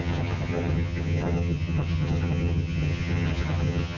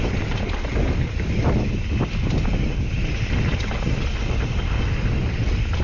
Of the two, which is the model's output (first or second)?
first